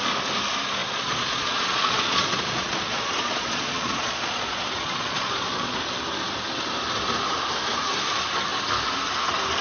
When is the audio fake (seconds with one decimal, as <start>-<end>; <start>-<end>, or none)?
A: 0.8-5.8